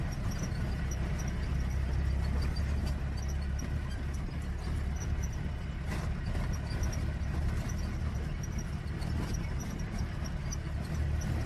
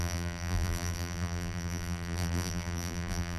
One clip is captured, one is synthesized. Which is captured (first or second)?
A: first